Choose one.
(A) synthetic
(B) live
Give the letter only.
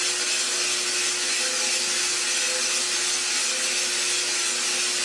B